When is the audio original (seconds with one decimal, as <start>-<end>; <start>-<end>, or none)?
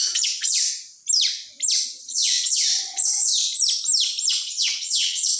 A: 0.7-2.0; 3.3-4.3